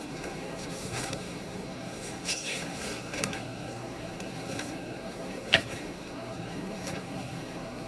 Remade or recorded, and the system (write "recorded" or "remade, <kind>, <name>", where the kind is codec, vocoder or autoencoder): remade, codec, SNAC